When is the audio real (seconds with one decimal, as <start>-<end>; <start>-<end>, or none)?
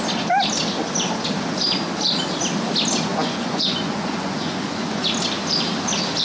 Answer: 0.0-3.1; 5.0-6.2